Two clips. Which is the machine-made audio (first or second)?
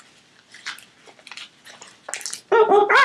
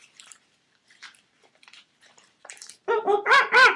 second